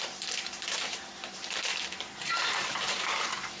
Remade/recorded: remade